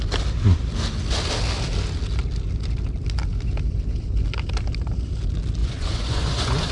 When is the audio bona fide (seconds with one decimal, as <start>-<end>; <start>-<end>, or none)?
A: 0.0-5.6